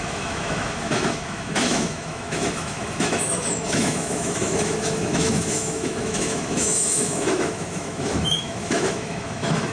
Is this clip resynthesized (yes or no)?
yes